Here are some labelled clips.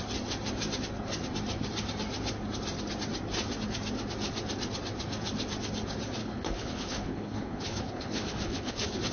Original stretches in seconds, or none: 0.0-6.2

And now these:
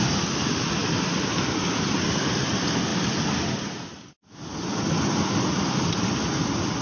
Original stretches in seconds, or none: 0.0-6.8

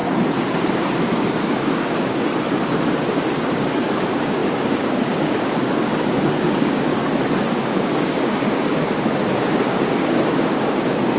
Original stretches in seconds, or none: 0.0-0.7; 2.3-3.1; 7.0-7.5

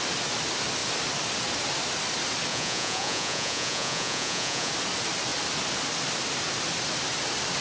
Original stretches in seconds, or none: 0.0-2.5; 4.7-7.6

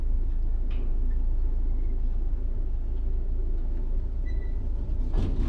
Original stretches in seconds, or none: 0.0-5.5

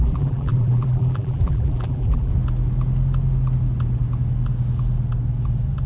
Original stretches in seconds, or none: 2.3-5.9

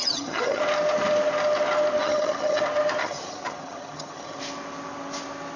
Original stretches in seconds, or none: 0.6-2.0; 2.6-3.0; 4.4-5.6